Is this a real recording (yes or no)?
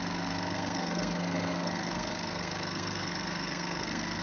no